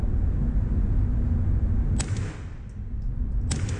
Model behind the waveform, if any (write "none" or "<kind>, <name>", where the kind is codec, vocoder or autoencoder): none